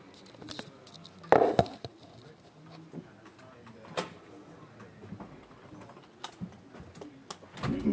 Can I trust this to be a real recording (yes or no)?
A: yes